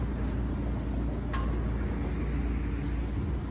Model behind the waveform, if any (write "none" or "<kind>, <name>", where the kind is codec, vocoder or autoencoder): none